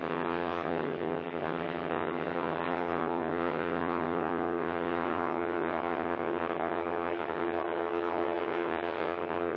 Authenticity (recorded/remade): remade